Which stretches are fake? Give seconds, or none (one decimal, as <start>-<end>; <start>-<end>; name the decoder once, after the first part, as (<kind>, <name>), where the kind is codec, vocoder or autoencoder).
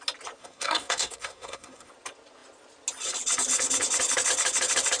0.4-1.9 (codec, SNAC)